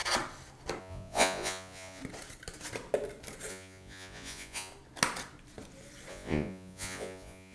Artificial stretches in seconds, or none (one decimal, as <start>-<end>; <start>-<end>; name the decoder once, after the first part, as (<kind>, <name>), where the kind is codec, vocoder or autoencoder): 0.8-2.0 (vocoder, Vocos); 3.5-4.7; 6.1-7.5